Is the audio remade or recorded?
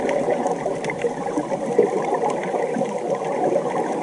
remade